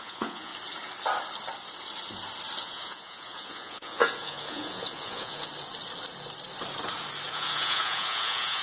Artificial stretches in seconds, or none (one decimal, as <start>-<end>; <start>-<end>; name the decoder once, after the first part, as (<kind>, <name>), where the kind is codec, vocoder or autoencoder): 0.0-0.5 (vocoder, Vocos); 2.6-5.5; 7.3-8.6